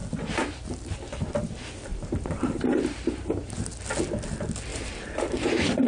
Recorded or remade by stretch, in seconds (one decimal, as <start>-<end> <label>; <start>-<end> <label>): 0.0-1.9 recorded; 1.9-3.7 remade; 3.7-4.7 recorded; 4.7-5.9 remade